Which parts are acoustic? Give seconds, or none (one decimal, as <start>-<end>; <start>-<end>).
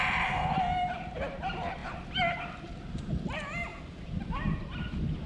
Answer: 0.0-3.7